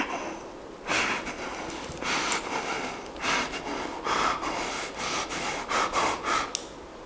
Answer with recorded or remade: recorded